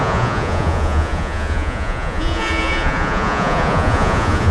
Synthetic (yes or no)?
yes